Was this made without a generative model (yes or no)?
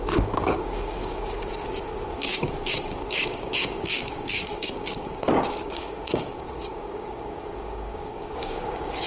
no